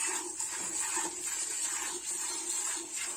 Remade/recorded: recorded